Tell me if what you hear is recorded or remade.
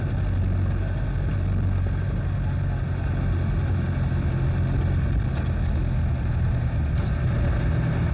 recorded